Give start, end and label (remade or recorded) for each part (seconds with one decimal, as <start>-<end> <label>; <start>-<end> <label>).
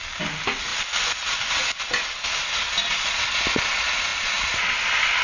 0.0-5.2 recorded